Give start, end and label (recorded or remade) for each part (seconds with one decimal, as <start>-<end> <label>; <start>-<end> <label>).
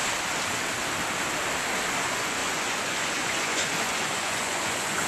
0.0-2.0 recorded; 2.0-5.1 remade